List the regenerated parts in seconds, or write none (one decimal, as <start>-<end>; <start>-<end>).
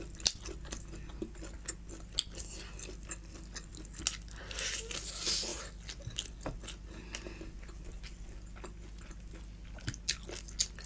none